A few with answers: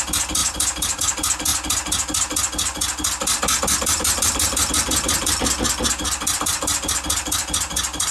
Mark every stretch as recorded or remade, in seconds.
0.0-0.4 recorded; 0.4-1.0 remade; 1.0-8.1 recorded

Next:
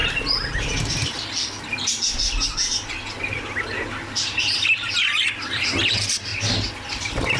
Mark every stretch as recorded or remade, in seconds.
0.0-7.4 recorded

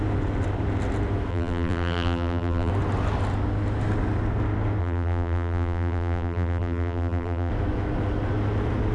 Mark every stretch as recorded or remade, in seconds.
0.0-1.3 recorded; 1.3-2.7 remade; 2.7-4.8 recorded; 4.8-7.5 remade; 7.5-8.9 recorded

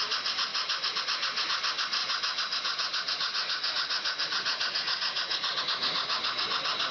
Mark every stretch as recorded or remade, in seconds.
0.0-2.0 recorded; 2.0-5.6 remade; 5.6-6.9 recorded